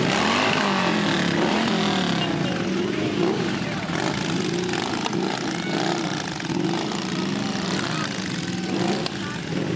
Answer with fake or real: real